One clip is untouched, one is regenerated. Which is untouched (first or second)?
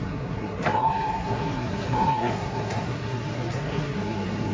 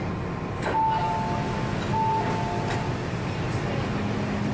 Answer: second